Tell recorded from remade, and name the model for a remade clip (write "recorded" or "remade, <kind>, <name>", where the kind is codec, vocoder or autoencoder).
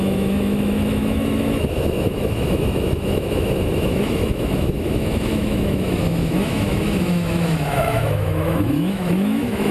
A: remade, autoencoder, DAC-VAE